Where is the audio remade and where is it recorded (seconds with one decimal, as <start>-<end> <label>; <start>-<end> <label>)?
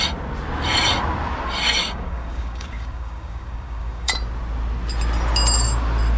0.0-1.8 recorded; 1.8-4.1 remade; 4.1-6.2 recorded